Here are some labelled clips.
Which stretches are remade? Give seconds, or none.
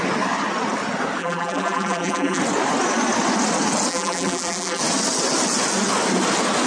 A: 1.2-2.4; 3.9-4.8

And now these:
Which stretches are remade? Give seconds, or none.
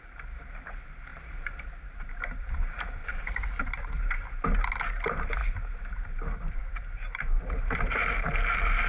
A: 1.1-3.6; 6.6-8.3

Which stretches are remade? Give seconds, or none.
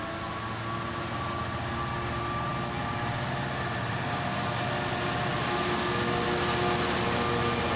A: none